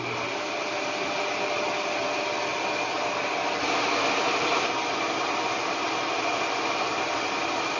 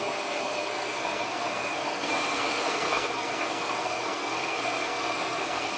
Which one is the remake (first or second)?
second